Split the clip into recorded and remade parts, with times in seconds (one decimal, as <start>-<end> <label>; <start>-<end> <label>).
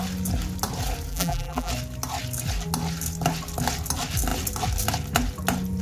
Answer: 0.0-1.1 recorded; 1.1-1.7 remade; 1.7-5.8 recorded